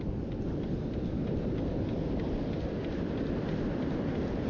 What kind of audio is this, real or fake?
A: real